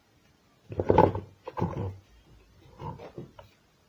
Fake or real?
real